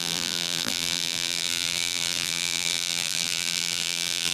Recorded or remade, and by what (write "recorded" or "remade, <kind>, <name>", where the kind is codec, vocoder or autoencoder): remade, vocoder, BigVGAN v2